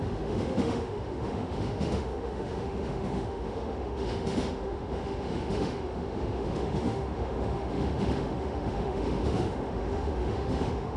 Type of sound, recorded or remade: remade